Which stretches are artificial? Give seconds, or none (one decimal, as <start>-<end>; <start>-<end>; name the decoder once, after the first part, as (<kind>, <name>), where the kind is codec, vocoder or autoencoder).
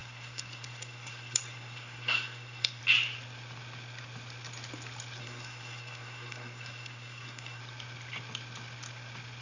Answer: 0.0-2.8 (codec, SNAC); 5.2-7.6